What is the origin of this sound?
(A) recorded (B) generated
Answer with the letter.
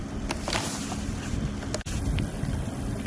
A